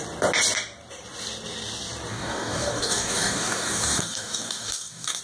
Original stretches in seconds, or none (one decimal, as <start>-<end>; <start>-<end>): 0.0-2.1